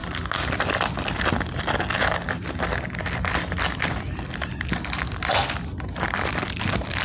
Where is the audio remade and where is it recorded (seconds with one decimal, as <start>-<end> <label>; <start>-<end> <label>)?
0.0-7.0 recorded

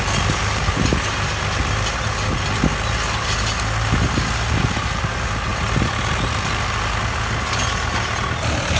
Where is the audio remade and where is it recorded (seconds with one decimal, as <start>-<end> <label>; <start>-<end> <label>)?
0.0-8.8 recorded

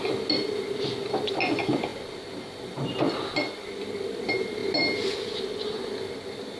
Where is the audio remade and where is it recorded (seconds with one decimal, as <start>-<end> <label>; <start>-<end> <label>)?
0.0-6.6 recorded

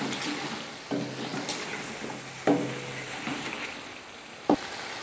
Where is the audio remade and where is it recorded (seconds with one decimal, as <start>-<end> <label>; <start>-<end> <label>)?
0.0-5.0 recorded

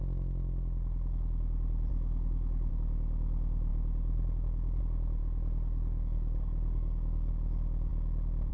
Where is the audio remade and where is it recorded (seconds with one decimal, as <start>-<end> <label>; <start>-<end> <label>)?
0.0-1.9 recorded; 1.9-2.7 remade; 2.7-5.2 recorded; 5.2-7.3 remade; 7.3-8.5 recorded

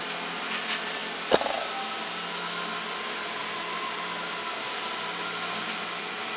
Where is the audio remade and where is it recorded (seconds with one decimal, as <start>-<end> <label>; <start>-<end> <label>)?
0.0-6.4 recorded

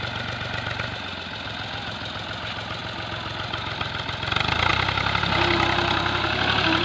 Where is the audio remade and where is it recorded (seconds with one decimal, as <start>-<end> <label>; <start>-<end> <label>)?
0.0-6.8 recorded